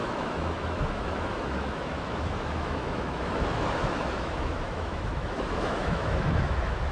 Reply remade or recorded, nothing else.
remade